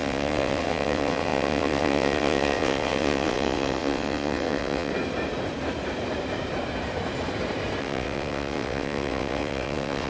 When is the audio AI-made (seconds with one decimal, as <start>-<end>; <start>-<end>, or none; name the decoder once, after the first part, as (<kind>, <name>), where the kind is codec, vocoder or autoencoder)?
0.0-4.9 (vocoder, WaveNeXt); 7.8-10.1